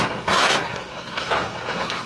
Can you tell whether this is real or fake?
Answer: fake